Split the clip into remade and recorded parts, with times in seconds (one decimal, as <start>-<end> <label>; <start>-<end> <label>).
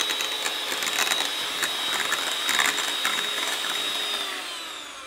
0.0-3.1 recorded; 3.1-3.9 remade; 3.9-5.1 recorded